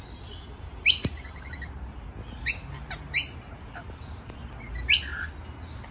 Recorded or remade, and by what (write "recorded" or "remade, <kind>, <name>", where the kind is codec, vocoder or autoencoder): recorded